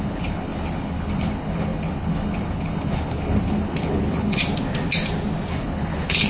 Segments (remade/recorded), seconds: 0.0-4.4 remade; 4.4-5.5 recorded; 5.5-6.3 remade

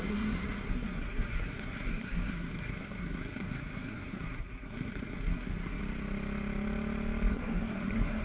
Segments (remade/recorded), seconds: 0.0-5.8 remade; 5.8-7.3 recorded; 7.3-8.2 remade

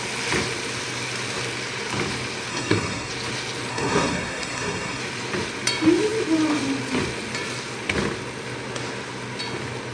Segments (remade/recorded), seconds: 0.0-2.5 recorded; 2.5-3.1 remade; 3.1-3.7 recorded; 3.7-5.0 remade; 5.0-9.9 recorded

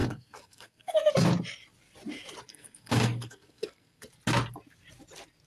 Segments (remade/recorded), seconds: 0.0-1.1 remade; 1.1-2.5 recorded; 2.5-4.1 remade; 4.1-5.5 recorded

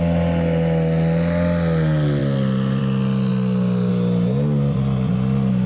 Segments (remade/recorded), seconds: 0.0-5.7 recorded

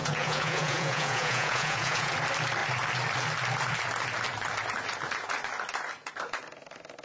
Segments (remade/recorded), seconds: 0.0-2.1 remade; 2.1-7.0 recorded

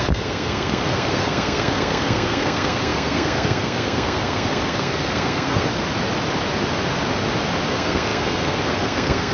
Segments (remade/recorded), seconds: 0.0-5.7 remade; 5.7-7.7 recorded; 7.7-9.3 remade

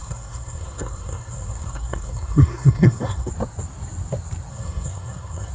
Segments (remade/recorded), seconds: 0.0-3.3 remade; 3.3-4.5 recorded; 4.5-5.5 remade